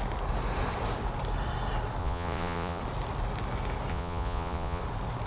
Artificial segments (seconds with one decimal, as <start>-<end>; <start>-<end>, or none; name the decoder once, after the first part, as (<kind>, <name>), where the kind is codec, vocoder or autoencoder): 2.0-2.8 (vocoder, Vocos); 3.9-4.8